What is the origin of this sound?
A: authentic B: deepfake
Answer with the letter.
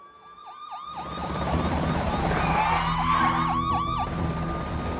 A